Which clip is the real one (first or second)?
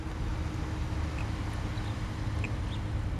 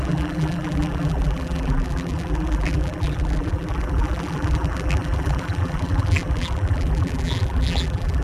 first